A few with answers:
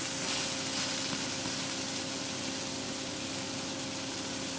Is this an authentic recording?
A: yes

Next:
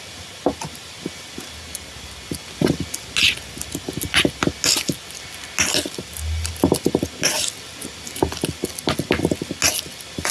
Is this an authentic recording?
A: yes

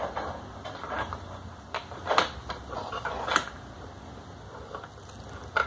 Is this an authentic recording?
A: yes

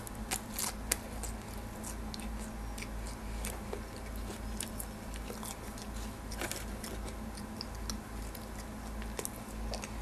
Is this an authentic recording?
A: yes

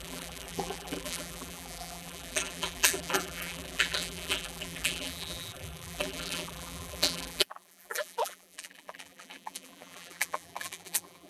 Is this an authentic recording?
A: no